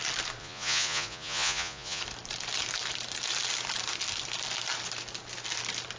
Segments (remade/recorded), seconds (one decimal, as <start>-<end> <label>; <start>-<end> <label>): 0.0-0.4 recorded; 0.4-2.0 remade; 2.0-6.0 recorded

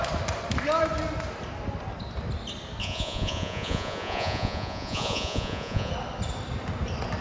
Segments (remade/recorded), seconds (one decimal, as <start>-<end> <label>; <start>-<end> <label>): 0.0-2.8 recorded; 2.8-5.9 remade; 5.9-7.2 recorded

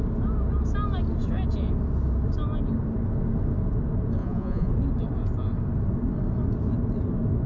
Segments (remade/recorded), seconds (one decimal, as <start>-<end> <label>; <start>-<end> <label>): 0.0-4.2 recorded; 4.2-4.7 remade; 4.7-7.5 recorded